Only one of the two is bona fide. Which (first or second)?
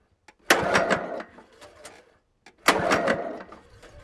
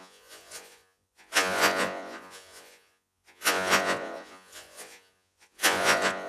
first